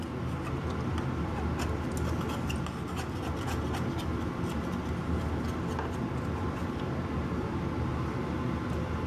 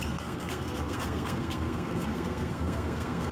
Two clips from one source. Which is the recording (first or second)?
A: first